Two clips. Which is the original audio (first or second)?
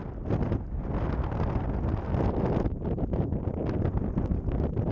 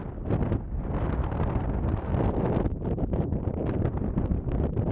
first